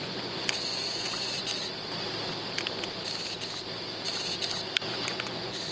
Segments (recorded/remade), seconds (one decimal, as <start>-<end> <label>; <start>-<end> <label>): 0.0-1.5 remade; 1.5-4.9 recorded; 4.9-5.7 remade